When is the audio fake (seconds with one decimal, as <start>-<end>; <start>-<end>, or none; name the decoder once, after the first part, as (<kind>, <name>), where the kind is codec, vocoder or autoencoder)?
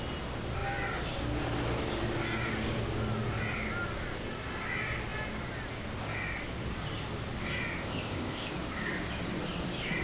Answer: 7.8-8.5 (codec, ZipCodec)